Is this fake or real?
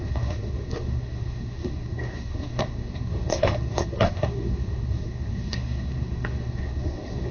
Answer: fake